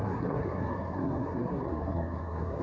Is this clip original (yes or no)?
no